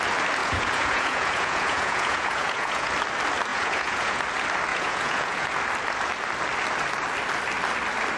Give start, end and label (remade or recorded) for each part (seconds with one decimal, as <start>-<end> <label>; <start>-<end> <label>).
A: 0.0-0.4 recorded; 0.4-2.9 remade; 2.9-3.5 recorded; 3.5-4.2 remade; 4.2-4.7 recorded; 4.7-5.5 remade; 5.5-8.2 recorded